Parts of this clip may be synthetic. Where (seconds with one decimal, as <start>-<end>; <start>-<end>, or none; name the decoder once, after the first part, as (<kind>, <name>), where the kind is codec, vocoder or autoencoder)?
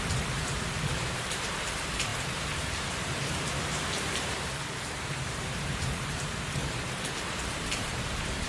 0.0-6.6 (vocoder, BigVGAN v2); 7.3-8.5